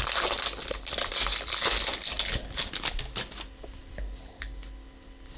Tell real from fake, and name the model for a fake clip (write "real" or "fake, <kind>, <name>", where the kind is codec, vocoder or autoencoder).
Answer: real